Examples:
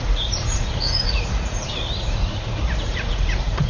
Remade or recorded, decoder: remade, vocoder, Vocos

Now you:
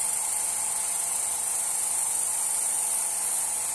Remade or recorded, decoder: recorded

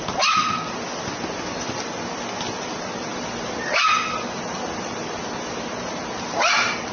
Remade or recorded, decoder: recorded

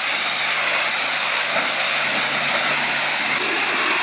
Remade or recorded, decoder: recorded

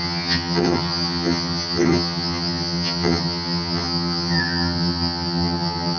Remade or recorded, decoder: remade, vocoder, HiFi-GAN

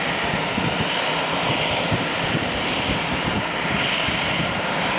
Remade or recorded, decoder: remade, vocoder, BigVGAN v2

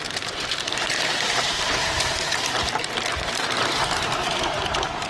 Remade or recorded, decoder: remade, vocoder, BigVGAN v2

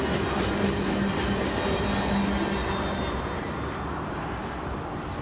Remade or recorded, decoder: recorded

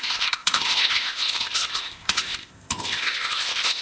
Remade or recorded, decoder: remade, codec, ZipCodec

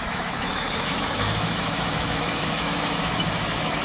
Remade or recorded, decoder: remade, autoencoder, DAC-VAE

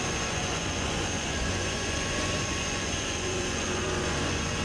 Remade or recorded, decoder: remade, vocoder, Vocos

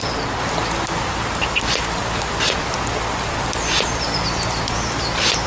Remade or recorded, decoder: recorded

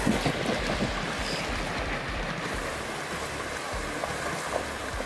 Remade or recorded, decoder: recorded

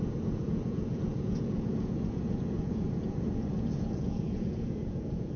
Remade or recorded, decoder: remade, vocoder, Vocos